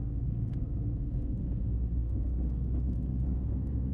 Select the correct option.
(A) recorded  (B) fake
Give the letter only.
B